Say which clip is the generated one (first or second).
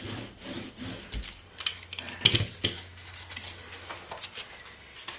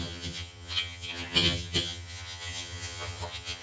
second